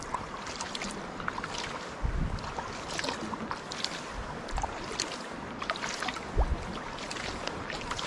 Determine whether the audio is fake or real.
real